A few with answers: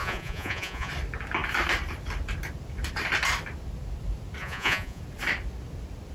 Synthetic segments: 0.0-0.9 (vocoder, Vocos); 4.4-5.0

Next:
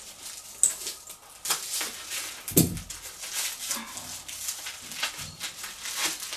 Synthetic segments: none

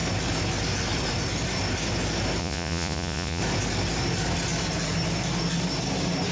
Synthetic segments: 2.4-3.4 (vocoder, Vocos)